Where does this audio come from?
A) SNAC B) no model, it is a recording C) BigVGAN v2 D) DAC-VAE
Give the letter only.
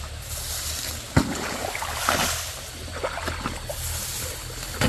C